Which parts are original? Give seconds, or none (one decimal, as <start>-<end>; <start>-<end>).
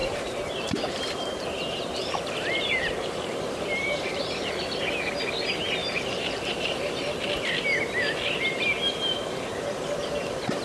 4.5-5.8; 7.2-10.6